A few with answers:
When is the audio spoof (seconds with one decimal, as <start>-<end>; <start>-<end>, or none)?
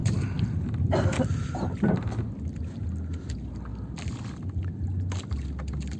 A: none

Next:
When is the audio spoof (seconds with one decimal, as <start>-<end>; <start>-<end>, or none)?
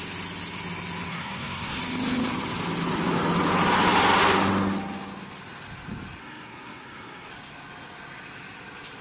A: 1.1-1.8; 6.2-7.3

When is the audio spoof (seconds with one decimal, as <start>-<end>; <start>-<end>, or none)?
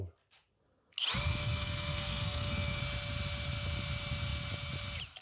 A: 1.4-2.8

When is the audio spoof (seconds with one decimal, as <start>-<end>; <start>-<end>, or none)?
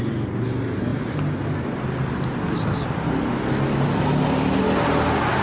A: none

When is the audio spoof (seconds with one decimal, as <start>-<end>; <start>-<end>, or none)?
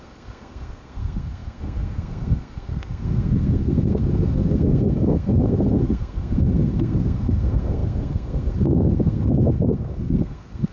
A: 0.0-10.7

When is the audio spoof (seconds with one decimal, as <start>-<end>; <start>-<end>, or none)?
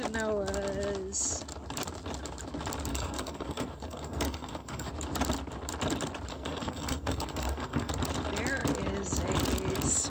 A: 2.9-4.9; 6.3-7.9